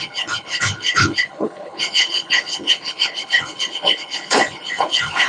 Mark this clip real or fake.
fake